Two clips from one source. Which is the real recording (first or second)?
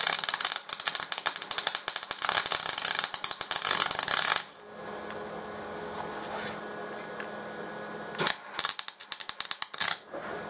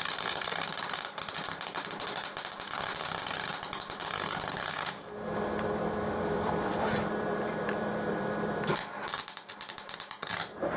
first